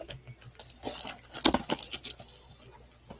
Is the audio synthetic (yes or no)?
no